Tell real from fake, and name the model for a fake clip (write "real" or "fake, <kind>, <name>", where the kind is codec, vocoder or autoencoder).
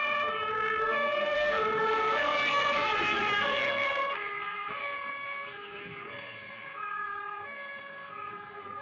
fake, codec, SNAC